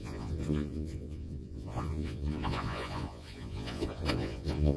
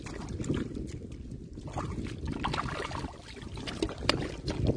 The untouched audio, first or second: second